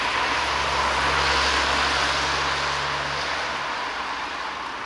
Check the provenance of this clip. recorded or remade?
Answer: recorded